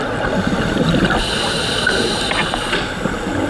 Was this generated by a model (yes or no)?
no